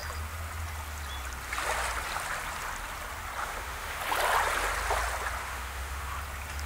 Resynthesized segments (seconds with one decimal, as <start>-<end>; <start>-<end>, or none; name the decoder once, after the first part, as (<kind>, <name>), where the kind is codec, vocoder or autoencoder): 3.4-4.0 (autoencoder, DAC-VAE); 5.4-6.1